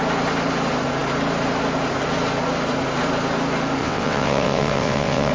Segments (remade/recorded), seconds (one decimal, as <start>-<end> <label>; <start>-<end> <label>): 0.0-3.8 recorded; 3.8-5.3 remade